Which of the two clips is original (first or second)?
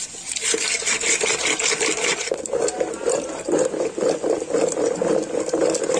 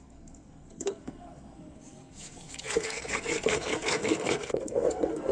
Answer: first